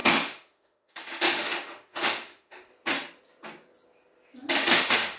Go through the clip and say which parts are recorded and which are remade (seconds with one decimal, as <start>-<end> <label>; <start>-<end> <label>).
0.0-2.7 remade; 2.7-4.5 recorded; 4.5-5.2 remade